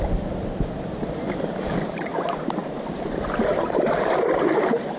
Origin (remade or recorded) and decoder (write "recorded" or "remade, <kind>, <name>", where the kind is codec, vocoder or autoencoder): recorded